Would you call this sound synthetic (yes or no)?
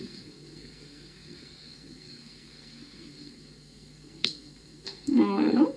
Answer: yes